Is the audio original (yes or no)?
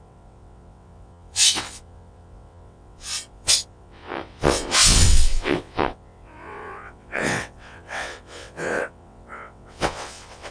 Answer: no